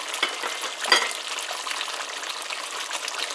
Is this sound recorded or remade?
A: recorded